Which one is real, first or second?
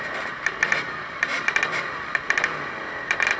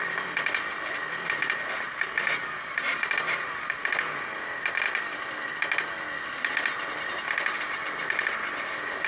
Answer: second